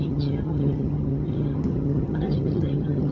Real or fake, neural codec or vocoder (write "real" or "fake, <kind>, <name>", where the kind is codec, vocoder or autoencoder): fake, vocoder, HiFi-GAN